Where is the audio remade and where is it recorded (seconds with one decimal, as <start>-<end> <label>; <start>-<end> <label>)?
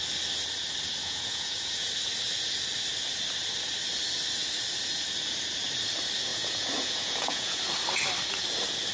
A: 0.0-1.0 recorded; 1.0-1.9 remade; 1.9-6.3 recorded; 6.3-7.6 remade; 7.6-8.9 recorded